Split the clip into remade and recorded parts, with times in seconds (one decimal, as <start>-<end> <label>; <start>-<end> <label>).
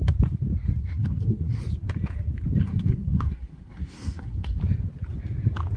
0.0-0.8 recorded; 0.8-1.6 remade; 1.6-2.6 recorded; 2.6-4.6 remade; 4.6-5.8 recorded